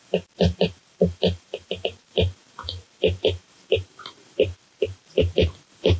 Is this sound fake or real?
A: fake